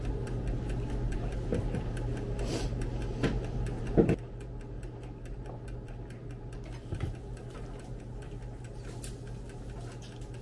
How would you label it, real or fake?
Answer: real